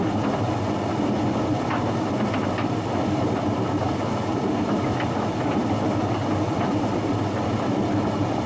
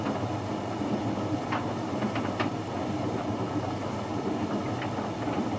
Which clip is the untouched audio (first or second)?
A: second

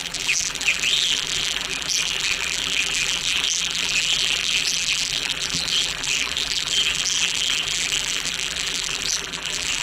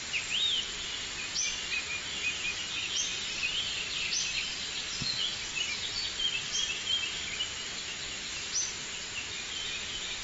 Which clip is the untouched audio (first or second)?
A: second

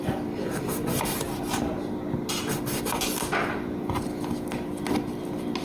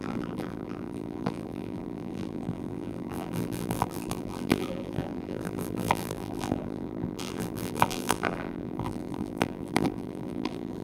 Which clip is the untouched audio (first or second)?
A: first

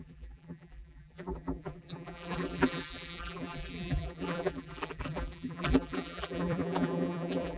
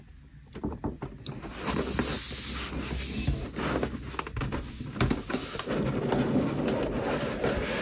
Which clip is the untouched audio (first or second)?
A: second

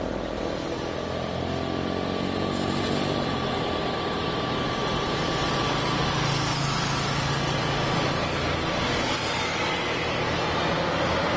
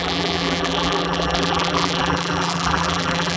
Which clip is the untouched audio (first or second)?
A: first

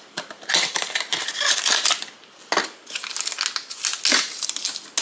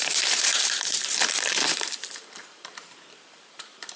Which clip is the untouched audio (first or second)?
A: first